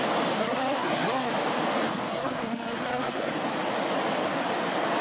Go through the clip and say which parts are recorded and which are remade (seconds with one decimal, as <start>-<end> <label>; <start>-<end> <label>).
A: 0.0-0.4 recorded; 0.4-1.3 remade; 1.3-2.1 recorded; 2.1-3.3 remade; 3.3-5.0 recorded